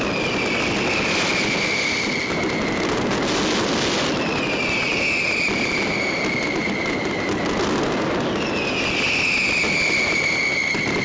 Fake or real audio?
real